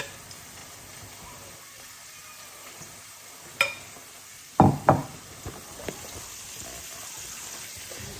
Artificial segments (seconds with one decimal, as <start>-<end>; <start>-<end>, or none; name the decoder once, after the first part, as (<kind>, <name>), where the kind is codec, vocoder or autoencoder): 0.0-0.6 (vocoder, BigVGAN v2); 4.5-8.2

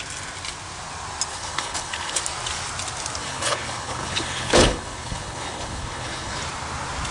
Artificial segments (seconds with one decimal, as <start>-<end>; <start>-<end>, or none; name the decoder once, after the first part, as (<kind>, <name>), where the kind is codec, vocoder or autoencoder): 1.3-2.2 (codec, HILCodec); 3.2-6.4

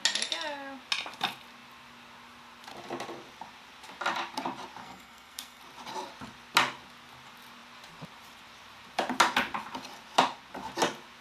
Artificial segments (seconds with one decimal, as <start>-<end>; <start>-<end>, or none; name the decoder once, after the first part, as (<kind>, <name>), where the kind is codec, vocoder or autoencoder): 4.8-5.6 (codec, SNAC)

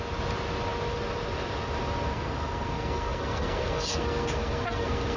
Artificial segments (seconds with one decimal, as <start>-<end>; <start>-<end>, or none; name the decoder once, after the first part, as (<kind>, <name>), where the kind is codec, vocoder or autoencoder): 2.1-5.2 (codec, SNAC)

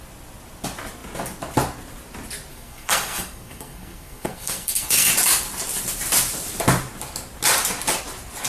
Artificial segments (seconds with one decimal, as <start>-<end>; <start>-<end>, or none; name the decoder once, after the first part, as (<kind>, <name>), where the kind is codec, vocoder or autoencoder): 2.5-5.1 (codec, SNAC)

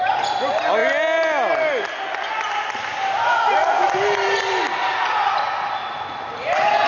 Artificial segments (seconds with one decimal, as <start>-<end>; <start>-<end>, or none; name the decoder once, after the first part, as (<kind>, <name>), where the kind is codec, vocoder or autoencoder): none

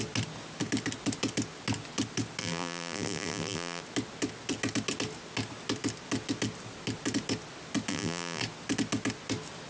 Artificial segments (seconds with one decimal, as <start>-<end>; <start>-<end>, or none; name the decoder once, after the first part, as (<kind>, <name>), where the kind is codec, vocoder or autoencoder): 2.4-3.8 (vocoder, BigVGAN v2); 7.9-8.4